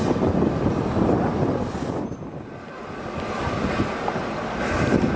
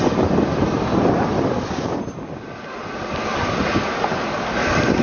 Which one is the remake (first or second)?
second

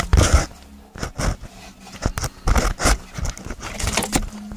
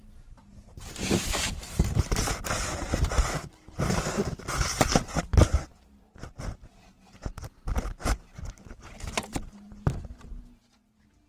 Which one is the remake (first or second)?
second